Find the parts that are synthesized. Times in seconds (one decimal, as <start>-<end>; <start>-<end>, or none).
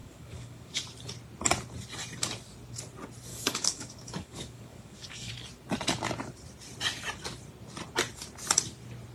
0.0-0.8; 3.3-5.3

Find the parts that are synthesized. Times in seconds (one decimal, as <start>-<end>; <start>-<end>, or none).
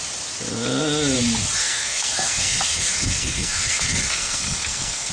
1.6-5.1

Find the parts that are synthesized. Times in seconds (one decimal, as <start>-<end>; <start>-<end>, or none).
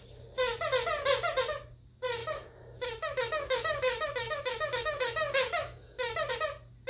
2.2-6.3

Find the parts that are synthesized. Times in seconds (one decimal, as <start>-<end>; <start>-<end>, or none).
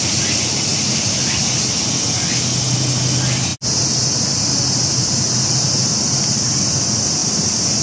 0.7-1.4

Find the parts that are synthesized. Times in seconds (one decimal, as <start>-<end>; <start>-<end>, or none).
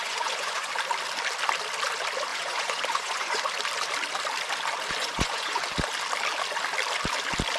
0.0-0.7; 2.3-3.4; 5.0-5.6